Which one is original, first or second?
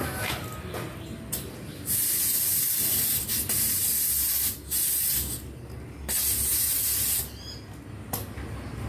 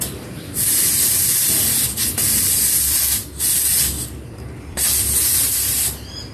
first